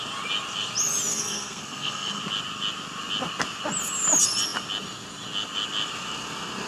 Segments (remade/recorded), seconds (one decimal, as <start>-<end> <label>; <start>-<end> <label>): 0.0-1.1 recorded; 1.1-2.2 remade; 2.2-6.7 recorded